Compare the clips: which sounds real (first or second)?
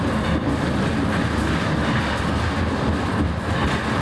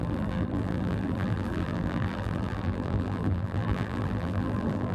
first